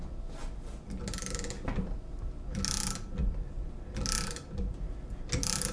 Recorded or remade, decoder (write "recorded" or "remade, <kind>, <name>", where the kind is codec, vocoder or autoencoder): recorded